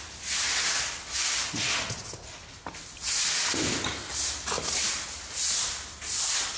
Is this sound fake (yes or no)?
no